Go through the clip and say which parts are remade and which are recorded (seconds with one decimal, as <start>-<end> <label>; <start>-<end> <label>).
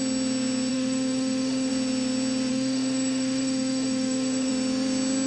0.0-0.7 recorded; 0.7-1.7 remade; 1.7-2.5 recorded; 2.5-4.5 remade; 4.5-5.3 recorded